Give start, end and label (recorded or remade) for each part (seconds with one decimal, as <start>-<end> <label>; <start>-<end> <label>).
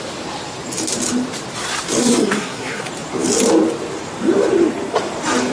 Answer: 0.0-2.0 recorded; 2.0-2.8 remade; 2.8-5.5 recorded